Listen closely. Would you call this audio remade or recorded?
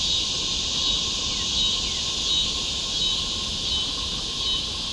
recorded